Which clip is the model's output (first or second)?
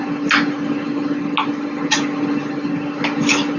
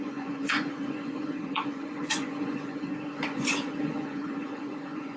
second